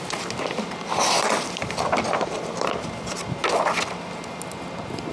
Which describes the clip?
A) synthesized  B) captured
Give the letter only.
B